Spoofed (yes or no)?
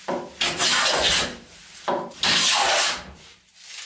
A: no